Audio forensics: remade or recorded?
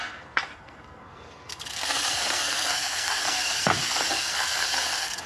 remade